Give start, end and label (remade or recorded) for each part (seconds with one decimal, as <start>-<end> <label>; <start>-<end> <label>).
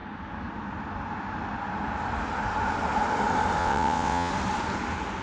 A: 0.0-3.6 recorded; 3.6-4.3 remade; 4.3-5.2 recorded